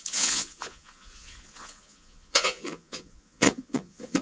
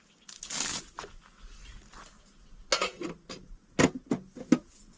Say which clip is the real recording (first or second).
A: second